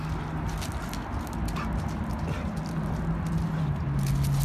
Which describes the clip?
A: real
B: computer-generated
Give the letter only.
A